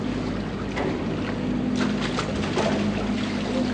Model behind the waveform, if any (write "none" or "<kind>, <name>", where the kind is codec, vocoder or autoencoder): none